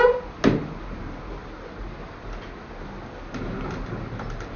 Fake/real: real